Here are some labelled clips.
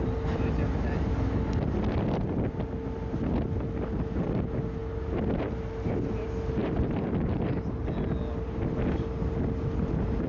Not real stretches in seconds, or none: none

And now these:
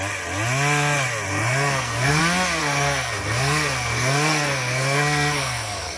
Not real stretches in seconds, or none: 1.3-2.2 (codec, SNAC); 2.6-6.0